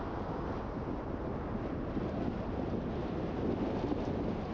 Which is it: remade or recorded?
recorded